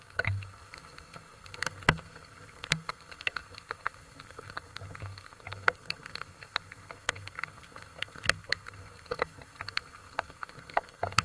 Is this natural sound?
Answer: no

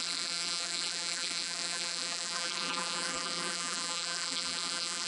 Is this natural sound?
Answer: no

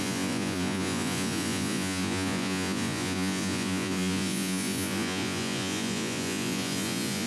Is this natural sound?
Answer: no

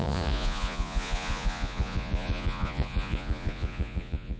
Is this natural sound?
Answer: no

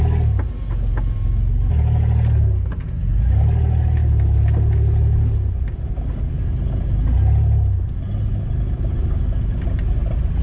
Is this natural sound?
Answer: yes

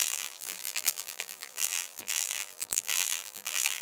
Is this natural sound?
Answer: no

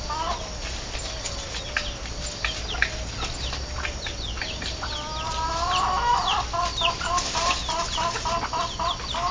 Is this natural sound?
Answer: yes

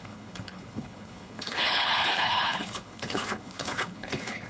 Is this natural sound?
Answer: no